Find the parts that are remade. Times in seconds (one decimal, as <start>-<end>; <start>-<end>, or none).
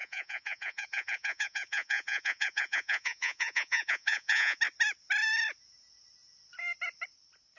0.0-4.6